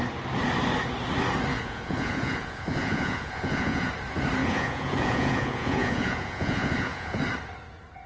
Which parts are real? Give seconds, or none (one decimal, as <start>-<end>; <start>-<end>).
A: 0.0-1.5; 3.9-4.4; 7.2-8.1